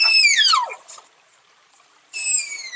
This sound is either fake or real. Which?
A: real